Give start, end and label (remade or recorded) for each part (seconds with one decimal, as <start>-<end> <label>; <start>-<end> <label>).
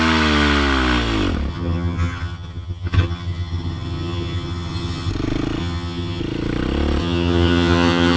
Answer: 0.0-1.5 recorded; 1.5-5.1 remade; 5.1-5.6 recorded; 5.6-6.2 remade; 6.2-7.0 recorded; 7.0-8.2 remade